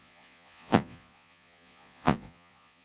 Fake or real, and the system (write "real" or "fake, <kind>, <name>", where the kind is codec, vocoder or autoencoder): fake, vocoder, Vocos